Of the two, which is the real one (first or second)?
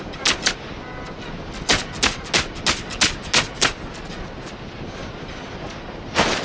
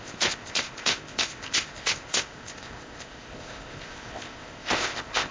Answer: first